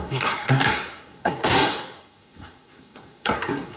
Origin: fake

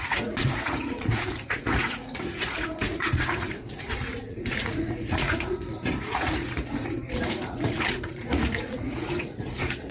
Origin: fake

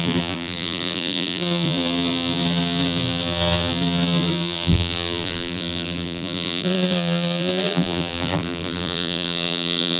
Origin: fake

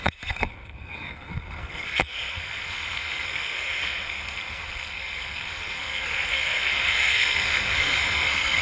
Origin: fake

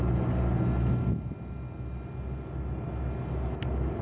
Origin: real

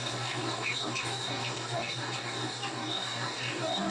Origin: fake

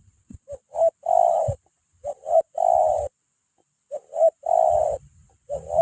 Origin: real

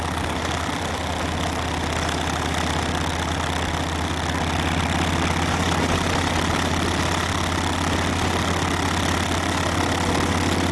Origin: real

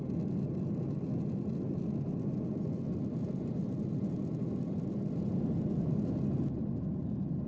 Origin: real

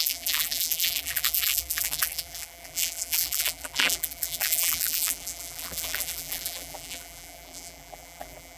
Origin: fake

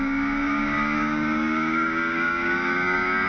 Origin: fake